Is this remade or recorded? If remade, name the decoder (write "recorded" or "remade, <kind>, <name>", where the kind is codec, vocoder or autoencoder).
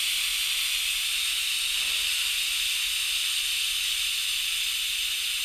recorded